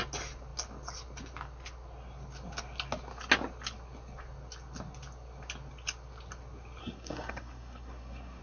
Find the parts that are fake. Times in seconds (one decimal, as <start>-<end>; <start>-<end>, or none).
6.8-8.4